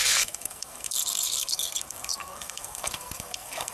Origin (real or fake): fake